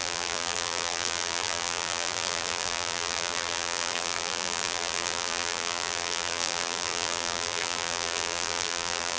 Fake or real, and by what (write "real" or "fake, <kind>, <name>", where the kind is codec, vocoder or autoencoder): fake, vocoder, BigVGAN v2